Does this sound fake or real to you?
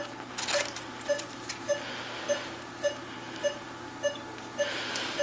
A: real